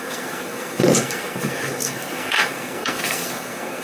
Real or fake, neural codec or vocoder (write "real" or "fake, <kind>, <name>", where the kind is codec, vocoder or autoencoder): fake, codec, SNAC